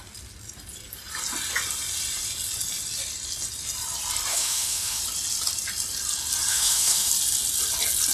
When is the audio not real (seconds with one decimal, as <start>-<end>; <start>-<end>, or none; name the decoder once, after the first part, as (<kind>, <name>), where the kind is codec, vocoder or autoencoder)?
4.3-5.0 (autoencoder, DAC-VAE); 6.5-7.1